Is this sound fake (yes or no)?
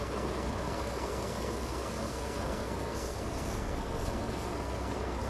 yes